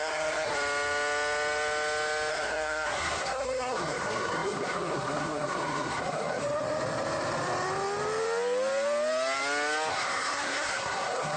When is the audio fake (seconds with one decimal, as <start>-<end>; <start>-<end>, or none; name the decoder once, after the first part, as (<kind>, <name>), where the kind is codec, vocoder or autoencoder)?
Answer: 0.0-0.5 (codec, SNAC); 2.3-6.4; 9.9-11.4